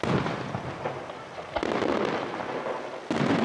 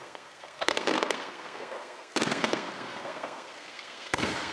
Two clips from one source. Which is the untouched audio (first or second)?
first